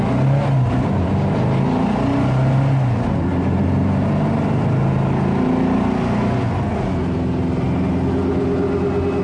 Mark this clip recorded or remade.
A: recorded